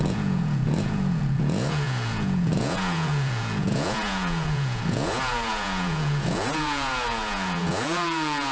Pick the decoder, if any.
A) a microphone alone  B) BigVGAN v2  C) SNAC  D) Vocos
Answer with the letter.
D